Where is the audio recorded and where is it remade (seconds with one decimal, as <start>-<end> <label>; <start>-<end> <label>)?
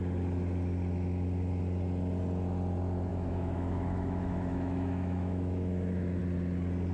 0.0-3.1 recorded; 3.1-6.2 remade; 6.2-6.9 recorded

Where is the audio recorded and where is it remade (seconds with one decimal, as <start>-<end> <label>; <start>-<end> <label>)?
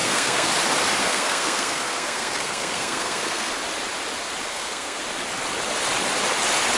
0.0-0.5 remade; 0.5-1.0 recorded; 1.0-3.5 remade; 3.5-4.5 recorded; 4.5-5.0 remade; 5.0-6.8 recorded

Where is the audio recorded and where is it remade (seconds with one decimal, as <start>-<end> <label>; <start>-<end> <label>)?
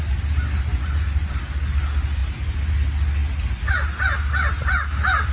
0.0-0.7 recorded; 0.7-1.3 remade; 1.3-5.3 recorded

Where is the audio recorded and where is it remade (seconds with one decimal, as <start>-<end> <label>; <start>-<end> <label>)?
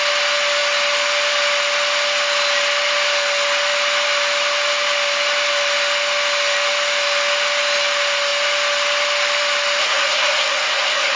0.0-9.8 recorded; 9.8-11.2 remade